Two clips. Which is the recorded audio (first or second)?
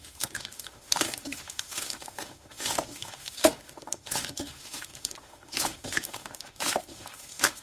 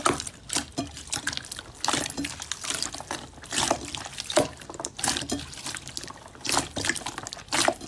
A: second